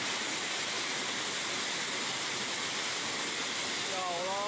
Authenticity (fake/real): real